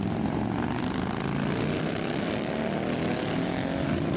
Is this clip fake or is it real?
real